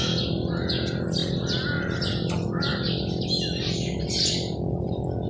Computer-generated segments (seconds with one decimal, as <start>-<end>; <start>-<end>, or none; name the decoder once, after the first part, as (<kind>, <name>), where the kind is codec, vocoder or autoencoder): none